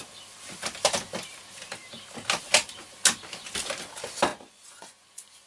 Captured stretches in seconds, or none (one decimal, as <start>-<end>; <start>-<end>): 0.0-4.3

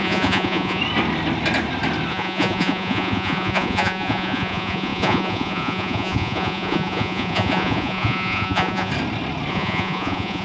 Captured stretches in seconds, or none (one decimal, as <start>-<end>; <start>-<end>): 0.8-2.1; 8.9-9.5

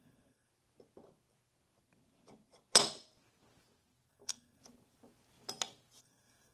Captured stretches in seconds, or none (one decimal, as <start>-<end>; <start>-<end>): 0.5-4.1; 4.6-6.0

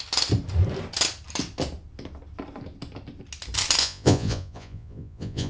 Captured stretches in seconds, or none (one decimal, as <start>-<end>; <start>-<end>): 0.0-3.8

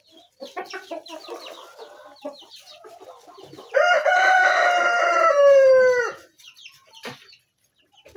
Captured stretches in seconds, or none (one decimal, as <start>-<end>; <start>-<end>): 0.0-8.2